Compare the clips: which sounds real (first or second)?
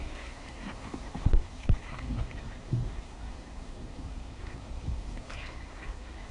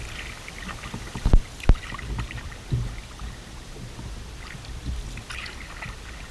second